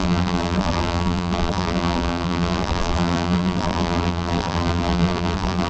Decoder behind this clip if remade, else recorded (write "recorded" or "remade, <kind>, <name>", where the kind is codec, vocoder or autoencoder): remade, vocoder, BigVGAN v2